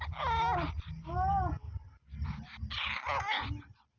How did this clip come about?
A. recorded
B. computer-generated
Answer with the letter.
A